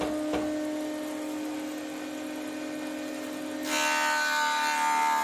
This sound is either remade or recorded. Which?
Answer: recorded